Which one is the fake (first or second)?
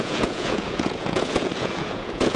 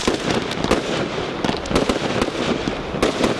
first